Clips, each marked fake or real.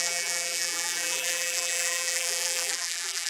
fake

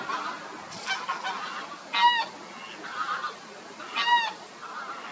real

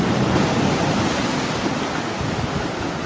real